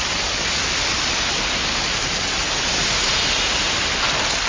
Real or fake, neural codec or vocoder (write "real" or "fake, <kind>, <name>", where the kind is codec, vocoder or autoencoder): real